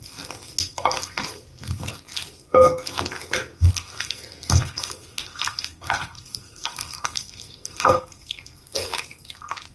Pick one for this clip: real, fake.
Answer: fake